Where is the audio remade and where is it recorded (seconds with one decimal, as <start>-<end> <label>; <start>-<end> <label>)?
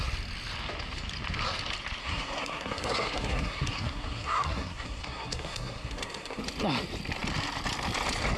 0.0-2.0 recorded; 2.0-6.4 remade; 6.4-8.4 recorded